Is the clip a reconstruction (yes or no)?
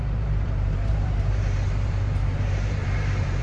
yes